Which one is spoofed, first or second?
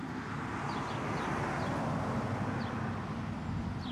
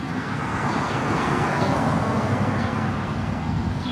second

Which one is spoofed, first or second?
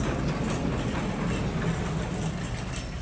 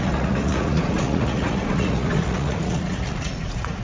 second